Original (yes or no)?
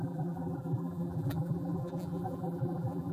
no